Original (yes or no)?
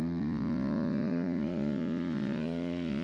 no